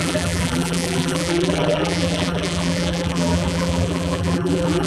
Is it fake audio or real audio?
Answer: fake